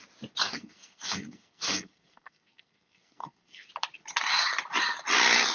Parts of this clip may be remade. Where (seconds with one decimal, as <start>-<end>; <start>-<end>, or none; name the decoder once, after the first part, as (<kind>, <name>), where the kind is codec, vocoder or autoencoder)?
0.4-3.7 (codec, SNAC)